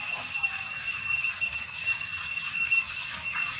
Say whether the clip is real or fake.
fake